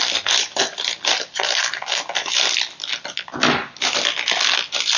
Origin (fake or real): real